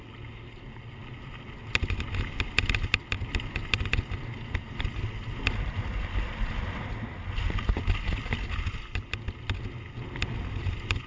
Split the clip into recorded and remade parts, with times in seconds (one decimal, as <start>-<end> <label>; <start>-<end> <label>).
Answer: 0.0-11.1 recorded